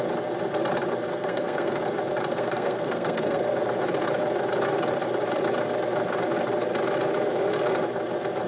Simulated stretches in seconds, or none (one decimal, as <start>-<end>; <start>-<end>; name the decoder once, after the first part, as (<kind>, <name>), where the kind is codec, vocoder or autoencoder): 1.1-1.8 (codec, SNAC); 2.3-3.4